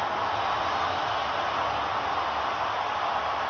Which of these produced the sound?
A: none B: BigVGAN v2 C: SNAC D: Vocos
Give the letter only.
B